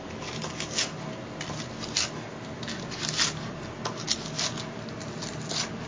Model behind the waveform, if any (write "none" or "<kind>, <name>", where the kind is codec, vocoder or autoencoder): none